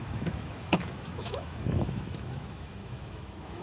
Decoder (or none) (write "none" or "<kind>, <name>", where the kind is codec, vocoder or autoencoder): autoencoder, DAC-VAE